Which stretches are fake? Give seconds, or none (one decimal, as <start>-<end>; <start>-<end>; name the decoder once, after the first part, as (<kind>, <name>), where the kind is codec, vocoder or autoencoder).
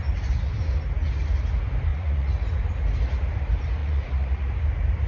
1.9-2.4 (vocoder, Vocos); 3.8-4.5